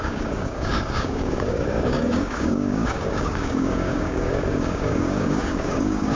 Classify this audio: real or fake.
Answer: fake